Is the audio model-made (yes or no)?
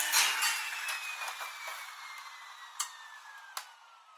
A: no